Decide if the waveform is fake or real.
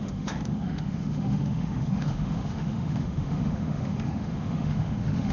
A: fake